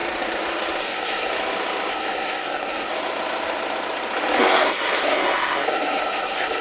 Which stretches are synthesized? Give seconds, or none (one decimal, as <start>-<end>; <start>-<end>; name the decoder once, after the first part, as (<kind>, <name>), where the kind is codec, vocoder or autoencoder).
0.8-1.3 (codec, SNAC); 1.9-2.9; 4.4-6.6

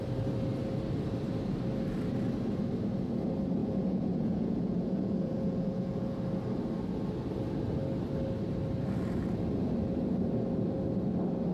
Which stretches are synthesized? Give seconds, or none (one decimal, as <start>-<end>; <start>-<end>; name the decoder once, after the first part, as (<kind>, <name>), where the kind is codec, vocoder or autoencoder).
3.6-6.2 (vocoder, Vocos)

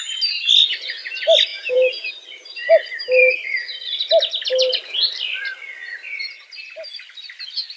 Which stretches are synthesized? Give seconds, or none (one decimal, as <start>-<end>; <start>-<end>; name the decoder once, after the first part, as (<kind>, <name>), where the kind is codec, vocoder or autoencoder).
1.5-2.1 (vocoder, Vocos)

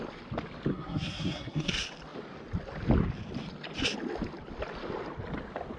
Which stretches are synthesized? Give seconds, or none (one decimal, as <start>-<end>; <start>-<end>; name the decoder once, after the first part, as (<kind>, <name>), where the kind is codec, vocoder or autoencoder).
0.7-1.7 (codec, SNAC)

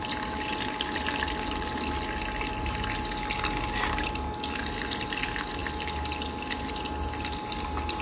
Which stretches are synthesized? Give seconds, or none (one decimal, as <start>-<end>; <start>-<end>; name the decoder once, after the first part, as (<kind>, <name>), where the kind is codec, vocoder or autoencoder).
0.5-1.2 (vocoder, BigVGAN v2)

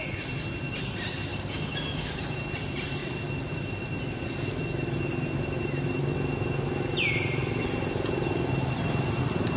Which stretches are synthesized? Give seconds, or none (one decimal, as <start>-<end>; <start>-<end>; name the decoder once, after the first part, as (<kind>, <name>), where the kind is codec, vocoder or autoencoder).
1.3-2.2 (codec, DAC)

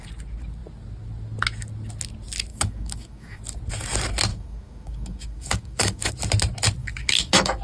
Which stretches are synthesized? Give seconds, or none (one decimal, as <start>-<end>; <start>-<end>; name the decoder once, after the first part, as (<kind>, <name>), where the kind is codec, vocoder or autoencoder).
2.5-3.4 (autoencoder, DAC-VAE); 4.3-6.1; 6.8-7.6

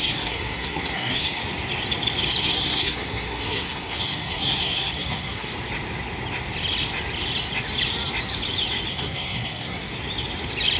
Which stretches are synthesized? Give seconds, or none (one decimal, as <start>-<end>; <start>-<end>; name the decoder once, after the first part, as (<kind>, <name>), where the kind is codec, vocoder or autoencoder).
0.0-1.4 (codec, SNAC); 2.4-5.5; 8.9-9.9